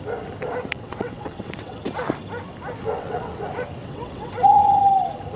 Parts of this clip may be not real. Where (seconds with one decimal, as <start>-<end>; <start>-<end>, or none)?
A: 0.7-1.8; 2.8-3.4; 3.8-4.8